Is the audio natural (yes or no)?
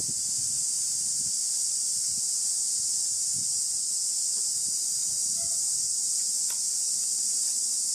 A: yes